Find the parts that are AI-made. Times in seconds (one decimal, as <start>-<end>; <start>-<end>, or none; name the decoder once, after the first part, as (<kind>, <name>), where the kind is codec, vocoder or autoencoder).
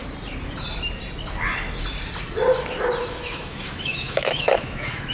3.1-5.1 (autoencoder, DAC-VAE)